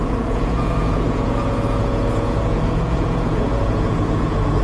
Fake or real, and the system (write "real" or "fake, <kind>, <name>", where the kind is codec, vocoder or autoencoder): fake, vocoder, Vocos